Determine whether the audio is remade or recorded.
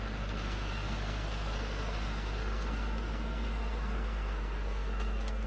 remade